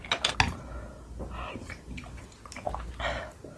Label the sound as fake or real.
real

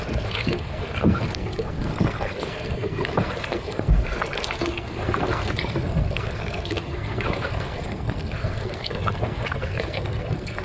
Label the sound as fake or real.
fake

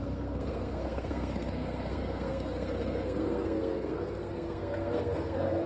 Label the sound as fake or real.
fake